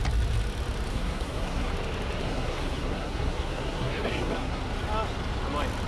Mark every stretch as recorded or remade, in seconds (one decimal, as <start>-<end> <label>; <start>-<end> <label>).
0.0-0.9 recorded; 0.9-1.7 remade; 1.7-2.2 recorded; 2.2-4.6 remade; 4.6-5.9 recorded